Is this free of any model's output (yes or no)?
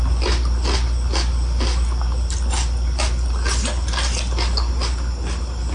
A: yes